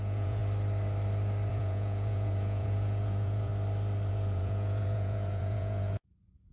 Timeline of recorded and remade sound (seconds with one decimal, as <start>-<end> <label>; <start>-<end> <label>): 0.0-0.4 remade; 0.4-1.5 recorded; 1.5-3.5 remade; 3.5-4.1 recorded; 4.1-6.5 remade

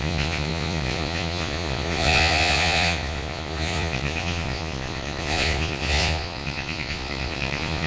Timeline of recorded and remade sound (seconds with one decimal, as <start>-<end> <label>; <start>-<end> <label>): 0.0-7.9 remade

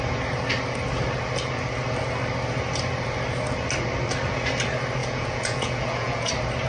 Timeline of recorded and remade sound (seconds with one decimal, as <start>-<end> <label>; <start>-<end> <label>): 0.0-5.0 recorded; 5.0-6.3 remade; 6.3-6.7 recorded

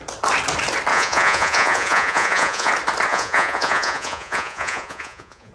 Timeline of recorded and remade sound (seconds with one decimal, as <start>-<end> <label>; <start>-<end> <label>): 0.0-0.9 recorded; 0.9-2.7 remade; 2.7-3.1 recorded; 3.1-5.5 remade

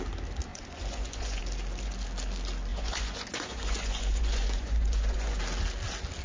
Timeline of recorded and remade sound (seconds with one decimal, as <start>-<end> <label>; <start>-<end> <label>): 0.0-0.5 recorded; 0.5-1.4 remade; 1.4-2.7 recorded; 2.7-5.4 remade; 5.4-6.2 recorded

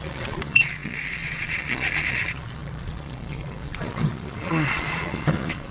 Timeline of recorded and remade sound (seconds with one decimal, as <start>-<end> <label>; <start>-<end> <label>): 0.0-5.7 remade